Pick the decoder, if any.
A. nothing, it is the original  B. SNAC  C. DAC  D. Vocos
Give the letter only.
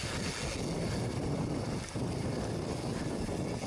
A